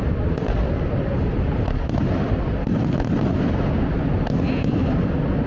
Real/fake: real